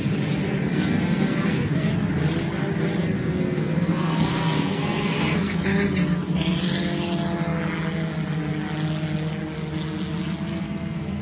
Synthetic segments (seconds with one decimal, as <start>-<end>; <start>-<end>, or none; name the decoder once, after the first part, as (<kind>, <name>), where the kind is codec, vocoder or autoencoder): 0.7-1.9 (codec, SNAC); 3.0-5.6; 10.5-11.2